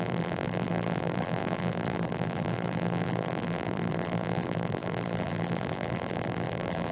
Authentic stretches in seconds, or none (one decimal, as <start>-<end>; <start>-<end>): none